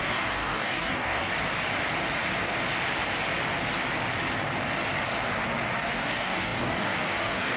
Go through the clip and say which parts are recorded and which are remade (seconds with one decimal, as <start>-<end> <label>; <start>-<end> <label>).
0.0-1.3 remade; 1.3-5.9 recorded; 5.9-7.6 remade